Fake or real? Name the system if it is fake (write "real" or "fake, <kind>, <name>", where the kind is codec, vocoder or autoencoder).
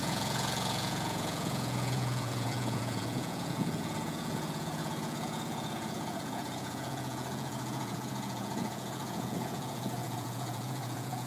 fake, vocoder, Vocos